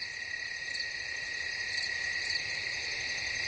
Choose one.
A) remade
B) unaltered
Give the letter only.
B